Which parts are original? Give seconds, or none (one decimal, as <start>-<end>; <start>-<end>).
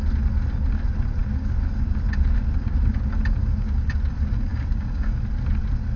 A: 0.0-3.4; 3.9-4.5; 5.2-6.0